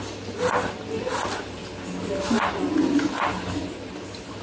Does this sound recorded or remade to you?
recorded